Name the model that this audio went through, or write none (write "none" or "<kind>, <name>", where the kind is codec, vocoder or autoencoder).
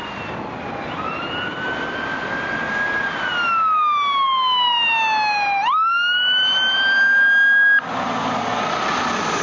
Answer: none